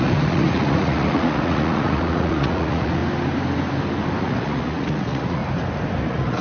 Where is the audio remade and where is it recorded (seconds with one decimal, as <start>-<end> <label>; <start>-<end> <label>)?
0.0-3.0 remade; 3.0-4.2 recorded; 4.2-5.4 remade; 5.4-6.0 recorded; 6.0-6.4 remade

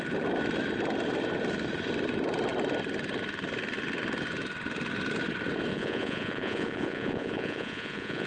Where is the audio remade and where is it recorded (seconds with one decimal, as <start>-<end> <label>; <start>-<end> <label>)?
0.0-5.7 recorded; 5.7-8.3 remade

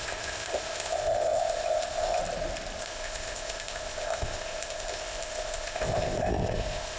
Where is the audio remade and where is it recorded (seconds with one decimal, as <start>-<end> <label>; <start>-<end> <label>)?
0.0-2.2 remade; 2.2-2.8 recorded; 2.8-7.0 remade

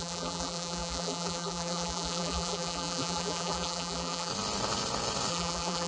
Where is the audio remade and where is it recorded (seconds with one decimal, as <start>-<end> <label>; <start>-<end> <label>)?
0.0-4.3 remade; 4.3-5.3 recorded; 5.3-5.9 remade